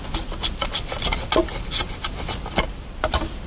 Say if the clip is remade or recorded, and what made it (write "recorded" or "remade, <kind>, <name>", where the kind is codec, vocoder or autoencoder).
recorded